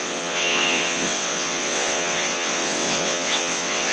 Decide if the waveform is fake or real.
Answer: fake